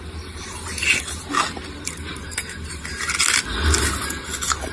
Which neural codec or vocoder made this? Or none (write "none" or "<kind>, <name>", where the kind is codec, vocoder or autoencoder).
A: none